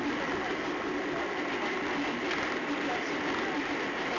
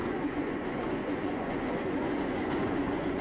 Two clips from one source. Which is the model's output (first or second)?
second